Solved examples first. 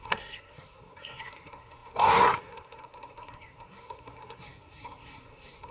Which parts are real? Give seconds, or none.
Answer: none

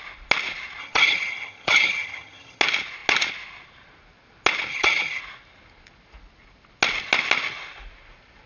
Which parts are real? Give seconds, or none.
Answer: 0.0-0.8; 2.6-4.7; 5.2-8.5